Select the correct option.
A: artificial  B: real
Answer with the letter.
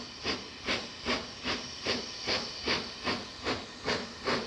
B